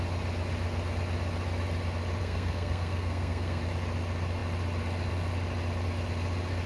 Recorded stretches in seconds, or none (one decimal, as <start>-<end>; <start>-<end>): 0.0-2.2; 3.6-6.7